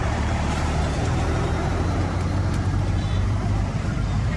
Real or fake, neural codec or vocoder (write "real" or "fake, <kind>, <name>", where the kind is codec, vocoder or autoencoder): fake, vocoder, BigVGAN v2